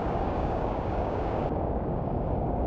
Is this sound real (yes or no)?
no